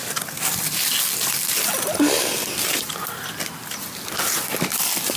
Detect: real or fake real